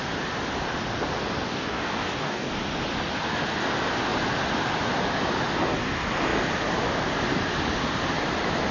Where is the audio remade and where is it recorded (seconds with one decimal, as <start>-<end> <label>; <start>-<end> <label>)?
0.0-1.5 recorded; 1.5-2.5 remade; 2.5-8.7 recorded